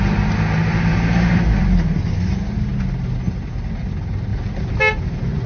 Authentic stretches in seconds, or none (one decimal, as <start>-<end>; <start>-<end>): 0.0-5.5